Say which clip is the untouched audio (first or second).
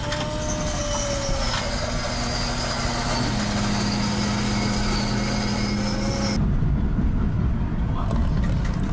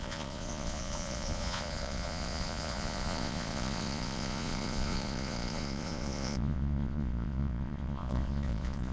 first